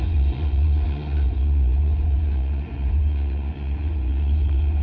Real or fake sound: fake